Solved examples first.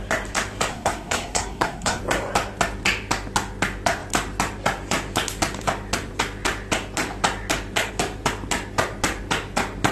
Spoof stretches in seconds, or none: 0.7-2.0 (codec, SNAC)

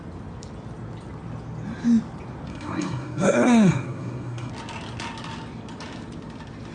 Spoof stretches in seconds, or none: 2.5-4.5 (codec, SNAC)

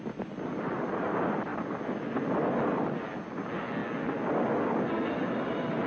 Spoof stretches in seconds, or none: none